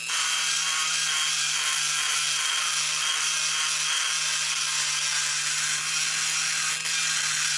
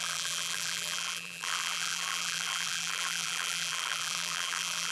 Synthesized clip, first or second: second